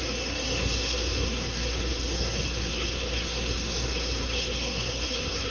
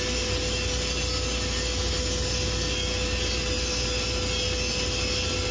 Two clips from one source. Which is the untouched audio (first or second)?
second